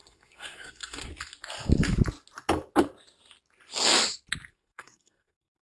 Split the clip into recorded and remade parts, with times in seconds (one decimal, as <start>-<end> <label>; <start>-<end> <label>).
0.0-1.1 remade; 1.1-4.5 recorded; 4.5-5.6 remade